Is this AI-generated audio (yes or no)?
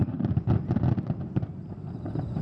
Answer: no